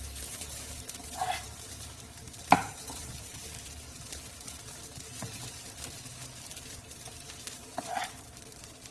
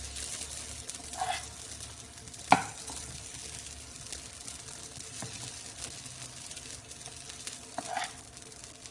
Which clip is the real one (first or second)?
second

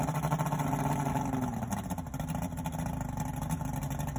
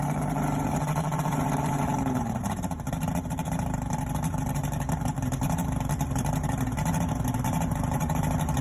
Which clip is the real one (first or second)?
first